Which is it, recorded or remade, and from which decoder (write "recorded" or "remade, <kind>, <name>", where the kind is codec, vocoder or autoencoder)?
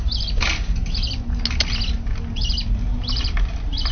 recorded